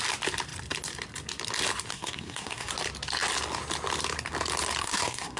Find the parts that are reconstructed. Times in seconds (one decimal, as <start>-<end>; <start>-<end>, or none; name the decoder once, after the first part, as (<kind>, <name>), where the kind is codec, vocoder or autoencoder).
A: 1.9-2.7 (codec, SNAC); 4.8-5.4